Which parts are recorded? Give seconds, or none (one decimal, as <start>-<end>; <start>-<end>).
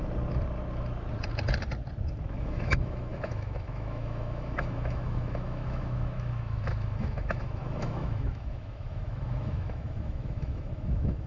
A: 0.0-2.3